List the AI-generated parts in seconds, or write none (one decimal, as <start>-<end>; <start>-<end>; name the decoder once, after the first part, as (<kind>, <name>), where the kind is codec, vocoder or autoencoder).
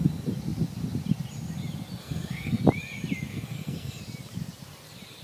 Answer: 2.0-2.6 (codec, SNAC); 3.3-4.0